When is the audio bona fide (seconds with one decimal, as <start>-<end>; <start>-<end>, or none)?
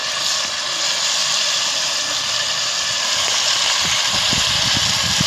0.0-1.2; 4.1-5.3